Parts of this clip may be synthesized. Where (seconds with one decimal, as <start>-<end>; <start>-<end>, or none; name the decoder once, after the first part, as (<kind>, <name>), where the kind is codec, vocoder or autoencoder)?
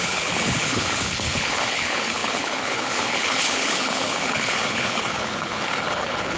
0.0-6.4 (codec, HILCodec)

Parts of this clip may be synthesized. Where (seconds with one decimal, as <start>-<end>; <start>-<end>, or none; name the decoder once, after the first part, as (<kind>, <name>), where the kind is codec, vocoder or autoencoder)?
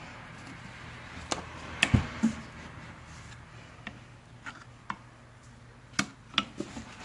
none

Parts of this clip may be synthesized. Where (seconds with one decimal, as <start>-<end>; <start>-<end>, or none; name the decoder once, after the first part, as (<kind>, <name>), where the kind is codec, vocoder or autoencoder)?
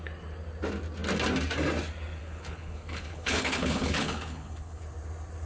2.2-4.8 (codec, HILCodec)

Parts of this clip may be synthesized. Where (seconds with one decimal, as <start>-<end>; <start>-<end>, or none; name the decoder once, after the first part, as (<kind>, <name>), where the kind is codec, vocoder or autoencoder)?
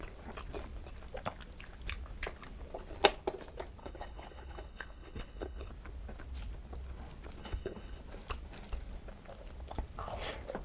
3.8-5.7 (codec, HILCodec); 7.4-8.0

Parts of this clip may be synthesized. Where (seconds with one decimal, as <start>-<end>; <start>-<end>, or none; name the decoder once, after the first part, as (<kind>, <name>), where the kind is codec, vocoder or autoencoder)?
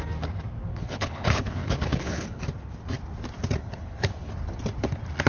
0.7-2.4 (codec, HILCodec); 3.6-4.3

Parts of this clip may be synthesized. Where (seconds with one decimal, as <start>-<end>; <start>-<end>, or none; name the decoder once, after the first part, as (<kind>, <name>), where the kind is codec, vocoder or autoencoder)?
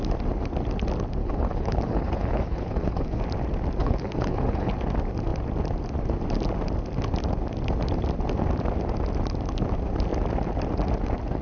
1.2-3.2 (codec, HILCodec); 3.8-4.7